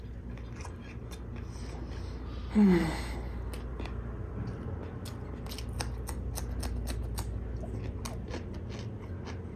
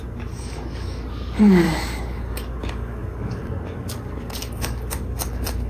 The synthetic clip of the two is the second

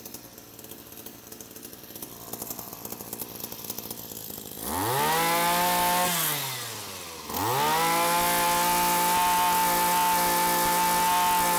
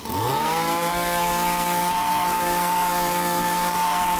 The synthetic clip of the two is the second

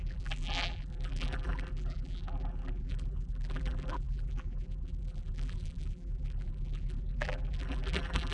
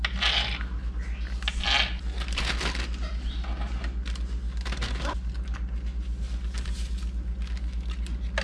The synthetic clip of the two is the first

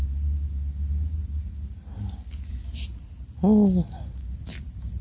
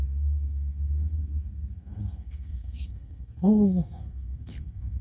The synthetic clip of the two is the second